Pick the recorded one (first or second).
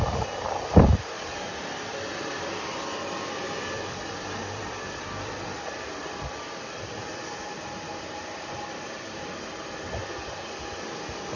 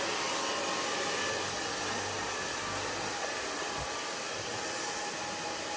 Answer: second